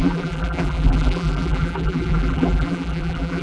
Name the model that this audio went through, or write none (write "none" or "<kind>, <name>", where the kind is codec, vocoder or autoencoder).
vocoder, BigVGAN v2